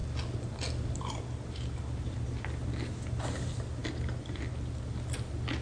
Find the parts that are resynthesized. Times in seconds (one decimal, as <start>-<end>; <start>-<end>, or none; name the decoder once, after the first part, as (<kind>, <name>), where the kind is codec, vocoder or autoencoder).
none

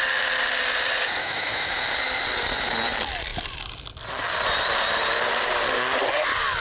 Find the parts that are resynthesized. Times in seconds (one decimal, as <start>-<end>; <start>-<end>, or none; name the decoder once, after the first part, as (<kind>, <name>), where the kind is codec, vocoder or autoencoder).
1.2-1.7 (autoencoder, DAC-VAE)

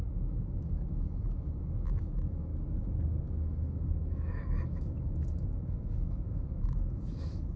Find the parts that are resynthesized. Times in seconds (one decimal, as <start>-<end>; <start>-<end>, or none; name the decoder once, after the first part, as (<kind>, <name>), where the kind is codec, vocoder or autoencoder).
0.0-2.5 (autoencoder, DAC-VAE); 3.4-7.6

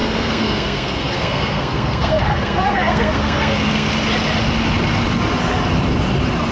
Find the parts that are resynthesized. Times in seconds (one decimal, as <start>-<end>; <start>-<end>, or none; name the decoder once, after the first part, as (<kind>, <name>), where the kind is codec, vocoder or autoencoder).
0.0-3.9 (codec, SNAC)

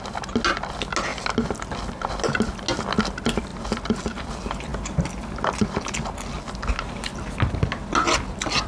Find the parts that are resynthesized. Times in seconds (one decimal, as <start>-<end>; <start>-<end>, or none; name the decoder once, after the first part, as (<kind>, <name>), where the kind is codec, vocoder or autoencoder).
none

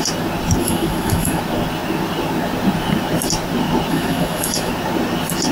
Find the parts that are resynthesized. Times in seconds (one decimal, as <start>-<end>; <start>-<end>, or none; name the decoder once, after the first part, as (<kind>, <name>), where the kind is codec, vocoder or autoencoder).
0.6-1.4 (autoencoder, DAC-VAE); 3.9-4.7